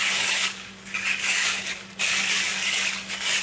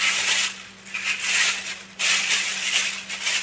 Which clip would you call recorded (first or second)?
second